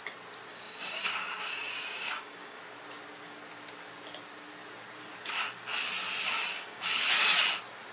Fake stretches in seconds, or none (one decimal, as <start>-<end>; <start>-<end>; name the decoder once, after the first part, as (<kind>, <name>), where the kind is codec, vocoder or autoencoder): 0.5-2.6 (codec, DAC); 6.5-7.1

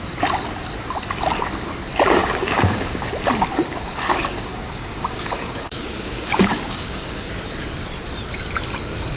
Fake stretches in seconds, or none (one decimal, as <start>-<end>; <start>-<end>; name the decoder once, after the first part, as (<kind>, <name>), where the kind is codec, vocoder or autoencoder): 2.2-3.0 (codec, DAC); 3.5-7.3